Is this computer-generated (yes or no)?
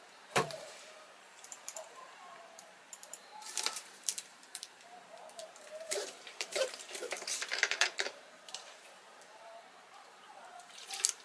yes